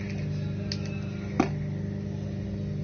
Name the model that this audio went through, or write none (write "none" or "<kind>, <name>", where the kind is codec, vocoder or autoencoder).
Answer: none